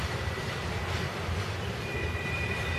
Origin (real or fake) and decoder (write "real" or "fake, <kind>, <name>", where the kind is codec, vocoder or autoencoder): real